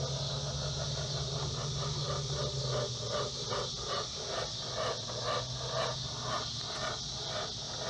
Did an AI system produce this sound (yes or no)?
no